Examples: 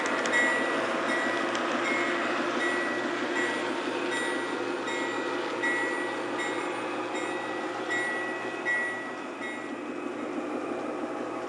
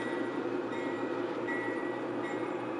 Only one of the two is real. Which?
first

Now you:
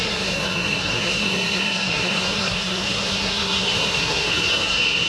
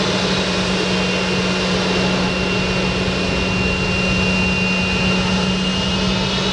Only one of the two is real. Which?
second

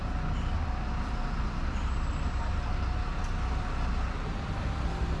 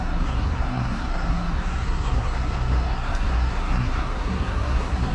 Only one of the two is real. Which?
first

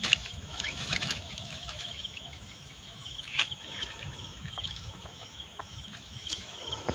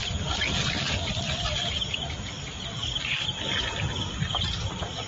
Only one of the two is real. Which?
second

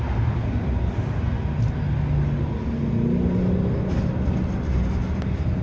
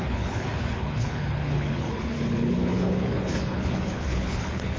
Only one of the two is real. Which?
first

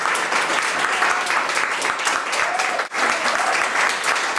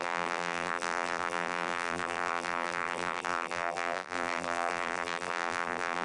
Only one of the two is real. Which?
first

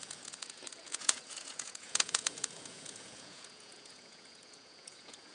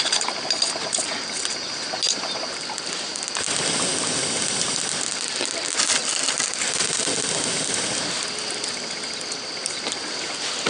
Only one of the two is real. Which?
second